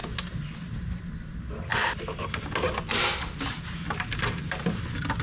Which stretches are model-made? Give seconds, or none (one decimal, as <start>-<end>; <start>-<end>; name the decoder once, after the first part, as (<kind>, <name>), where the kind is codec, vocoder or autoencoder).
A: none